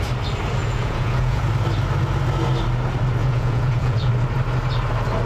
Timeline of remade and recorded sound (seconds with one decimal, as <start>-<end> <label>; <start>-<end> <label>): 0.0-0.6 recorded; 0.6-1.4 remade; 1.4-3.2 recorded; 3.2-4.1 remade; 4.1-5.3 recorded